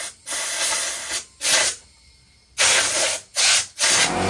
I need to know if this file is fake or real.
real